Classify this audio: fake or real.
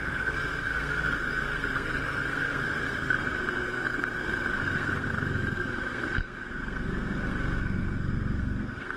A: fake